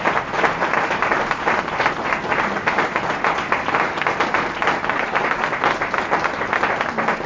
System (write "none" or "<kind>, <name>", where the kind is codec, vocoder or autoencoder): none